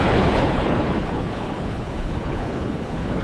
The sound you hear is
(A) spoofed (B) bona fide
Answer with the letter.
A